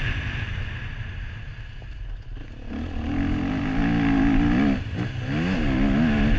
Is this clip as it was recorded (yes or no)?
yes